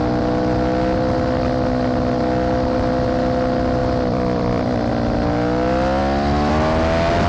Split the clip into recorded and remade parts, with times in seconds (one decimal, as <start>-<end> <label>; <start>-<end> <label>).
0.0-3.8 recorded; 3.8-4.9 remade; 4.9-6.0 recorded; 6.0-6.5 remade; 6.5-7.3 recorded